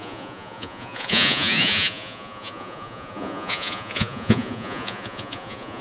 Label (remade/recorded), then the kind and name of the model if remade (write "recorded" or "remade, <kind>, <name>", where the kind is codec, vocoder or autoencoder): remade, vocoder, Vocos